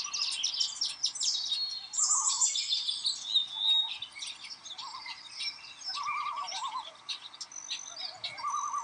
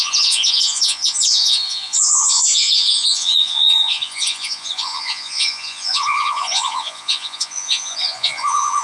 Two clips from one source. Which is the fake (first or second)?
second